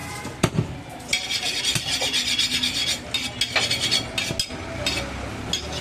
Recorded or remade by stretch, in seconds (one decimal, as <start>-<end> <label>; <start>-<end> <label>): 0.0-1.6 remade; 1.6-5.8 recorded